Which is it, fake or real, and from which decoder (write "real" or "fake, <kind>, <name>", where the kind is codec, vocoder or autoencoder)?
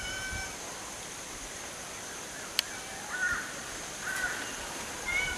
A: real